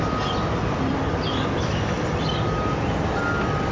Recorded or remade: recorded